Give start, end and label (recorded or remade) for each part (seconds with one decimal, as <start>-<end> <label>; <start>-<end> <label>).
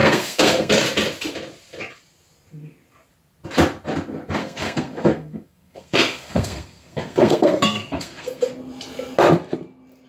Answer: 0.0-0.7 remade; 0.7-4.4 recorded; 4.4-8.5 remade; 8.5-10.1 recorded